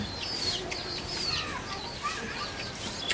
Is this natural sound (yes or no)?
yes